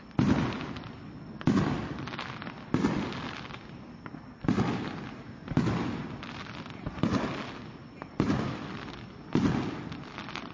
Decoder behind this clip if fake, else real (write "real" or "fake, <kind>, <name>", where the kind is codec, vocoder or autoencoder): real